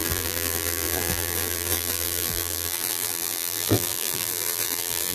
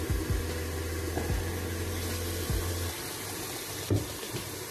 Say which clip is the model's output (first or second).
first